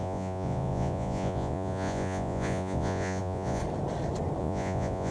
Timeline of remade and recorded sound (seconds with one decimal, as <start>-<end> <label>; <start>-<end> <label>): 0.0-3.6 remade; 3.6-4.4 recorded; 4.4-5.1 remade